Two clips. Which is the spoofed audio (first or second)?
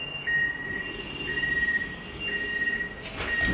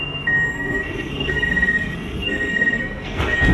second